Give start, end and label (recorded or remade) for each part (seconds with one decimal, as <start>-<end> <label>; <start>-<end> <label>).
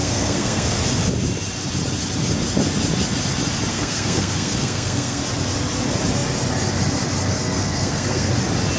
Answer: 0.0-0.8 remade; 0.8-3.7 recorded; 3.7-5.2 remade; 5.2-7.3 recorded; 7.3-8.3 remade; 8.3-8.8 recorded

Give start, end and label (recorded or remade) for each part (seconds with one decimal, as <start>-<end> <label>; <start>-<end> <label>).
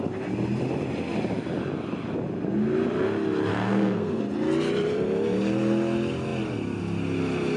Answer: 0.0-3.5 recorded; 3.5-4.2 remade; 4.2-7.6 recorded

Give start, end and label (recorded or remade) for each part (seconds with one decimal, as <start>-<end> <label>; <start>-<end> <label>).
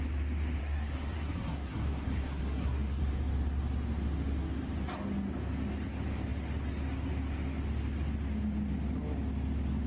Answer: 0.0-0.6 recorded; 0.6-3.0 remade; 3.0-9.9 recorded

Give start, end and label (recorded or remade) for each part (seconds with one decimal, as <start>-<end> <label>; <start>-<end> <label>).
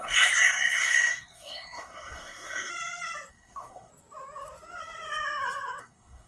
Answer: 0.0-2.7 remade; 2.7-3.3 recorded; 3.3-3.9 remade; 3.9-5.8 recorded; 5.8-6.3 remade